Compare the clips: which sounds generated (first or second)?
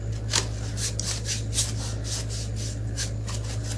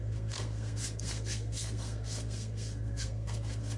second